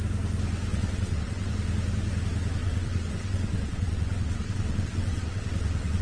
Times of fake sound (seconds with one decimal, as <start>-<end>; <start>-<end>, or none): 0.7-1.5; 2.6-6.0